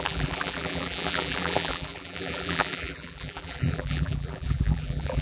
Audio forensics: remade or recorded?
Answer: remade